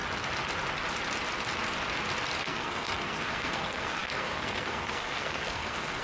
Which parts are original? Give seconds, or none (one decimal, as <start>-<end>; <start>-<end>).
0.0-2.4